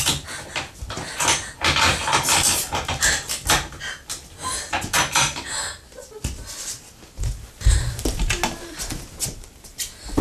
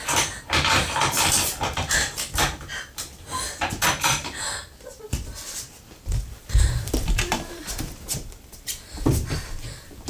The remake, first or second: second